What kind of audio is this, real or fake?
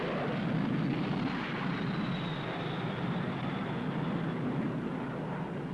real